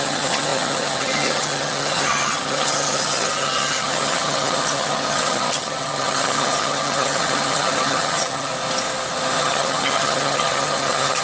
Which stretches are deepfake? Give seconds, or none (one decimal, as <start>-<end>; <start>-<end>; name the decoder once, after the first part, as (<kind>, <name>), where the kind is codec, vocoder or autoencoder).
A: 0.0-8.5 (vocoder, HiFi-GAN); 9.4-11.2